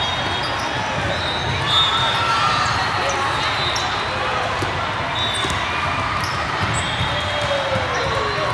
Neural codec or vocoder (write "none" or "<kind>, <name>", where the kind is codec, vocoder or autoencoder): none